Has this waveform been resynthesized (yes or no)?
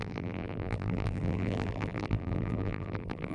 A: yes